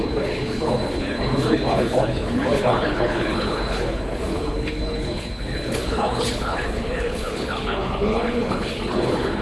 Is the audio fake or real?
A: fake